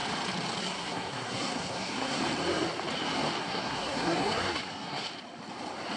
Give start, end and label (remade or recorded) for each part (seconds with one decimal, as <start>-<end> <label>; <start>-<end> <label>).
0.0-0.6 recorded; 0.6-2.2 remade; 2.2-3.4 recorded; 3.4-5.1 remade; 5.1-6.0 recorded